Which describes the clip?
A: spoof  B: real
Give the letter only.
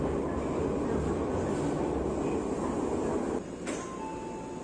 B